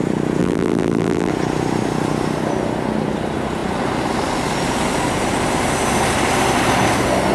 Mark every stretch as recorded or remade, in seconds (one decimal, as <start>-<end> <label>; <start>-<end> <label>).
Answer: 0.0-0.4 recorded; 0.4-1.3 remade; 1.3-7.3 recorded